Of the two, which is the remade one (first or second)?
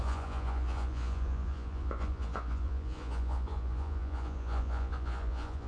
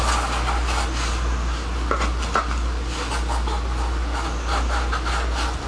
first